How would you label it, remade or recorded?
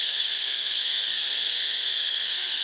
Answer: remade